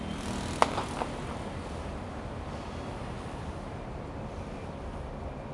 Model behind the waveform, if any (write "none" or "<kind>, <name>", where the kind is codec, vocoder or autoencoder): none